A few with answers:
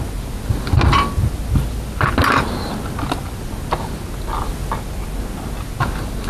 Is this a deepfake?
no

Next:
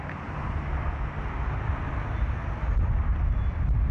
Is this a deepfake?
no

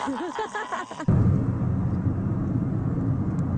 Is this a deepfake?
no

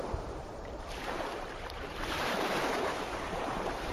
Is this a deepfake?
yes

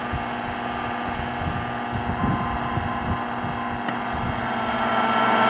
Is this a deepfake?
no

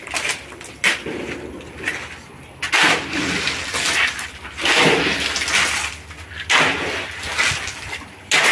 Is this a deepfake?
no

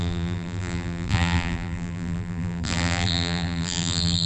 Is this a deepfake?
yes